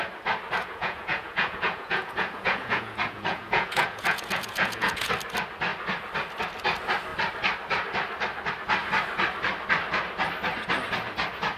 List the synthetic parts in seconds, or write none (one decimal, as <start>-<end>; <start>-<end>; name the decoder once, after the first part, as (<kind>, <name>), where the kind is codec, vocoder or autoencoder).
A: 0.6-5.1 (vocoder, Vocos)